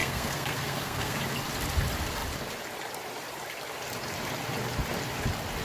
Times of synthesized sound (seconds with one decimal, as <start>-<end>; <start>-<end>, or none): 0.0-1.2